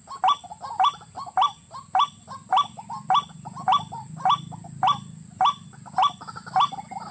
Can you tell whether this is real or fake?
real